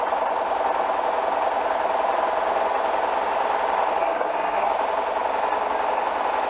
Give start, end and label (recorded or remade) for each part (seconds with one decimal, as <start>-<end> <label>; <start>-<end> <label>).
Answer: 0.0-4.0 recorded; 4.0-4.7 remade; 4.7-6.5 recorded

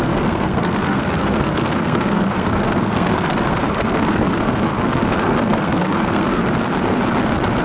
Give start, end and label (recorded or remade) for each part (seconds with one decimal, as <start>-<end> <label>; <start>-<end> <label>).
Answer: 0.0-6.4 remade; 6.4-7.6 recorded

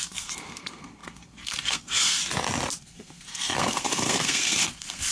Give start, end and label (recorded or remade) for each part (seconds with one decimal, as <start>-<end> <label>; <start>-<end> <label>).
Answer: 0.0-2.2 remade; 2.2-2.8 recorded; 2.8-5.1 remade

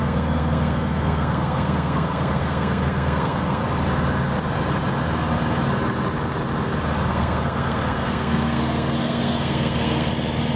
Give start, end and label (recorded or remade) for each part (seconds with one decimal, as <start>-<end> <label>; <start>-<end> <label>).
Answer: 0.0-3.6 remade; 3.6-7.1 recorded; 7.1-10.1 remade; 10.1-10.6 recorded

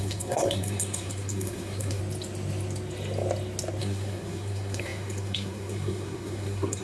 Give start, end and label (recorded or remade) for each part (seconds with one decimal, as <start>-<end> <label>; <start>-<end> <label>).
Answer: 0.0-2.0 remade; 2.0-3.8 recorded; 3.8-6.8 remade

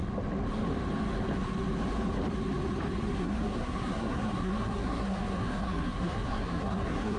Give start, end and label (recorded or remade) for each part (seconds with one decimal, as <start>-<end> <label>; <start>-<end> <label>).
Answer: 0.0-3.1 recorded; 3.1-7.2 remade

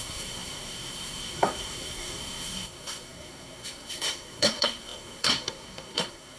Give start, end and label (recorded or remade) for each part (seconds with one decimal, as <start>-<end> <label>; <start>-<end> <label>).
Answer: 0.0-6.4 remade